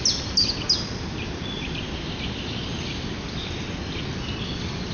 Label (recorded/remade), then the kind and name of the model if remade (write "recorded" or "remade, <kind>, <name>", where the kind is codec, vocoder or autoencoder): recorded